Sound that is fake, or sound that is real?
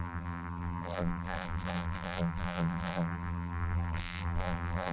fake